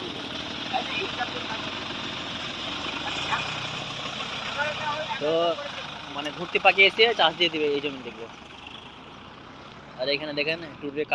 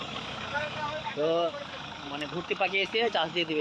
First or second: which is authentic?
first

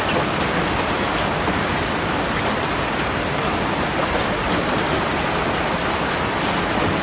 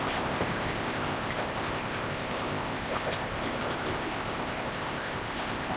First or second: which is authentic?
first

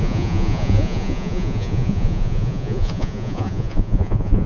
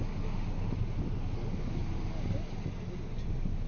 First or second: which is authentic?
second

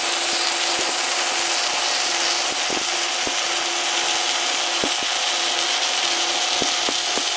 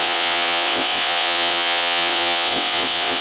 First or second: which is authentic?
first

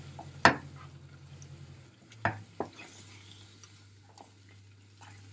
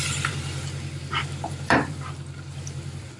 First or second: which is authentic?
first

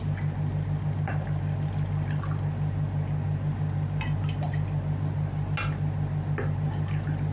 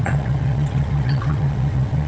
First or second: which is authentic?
first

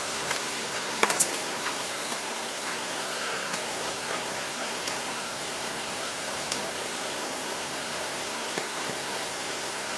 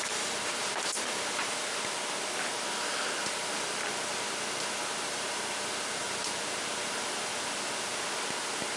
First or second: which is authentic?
second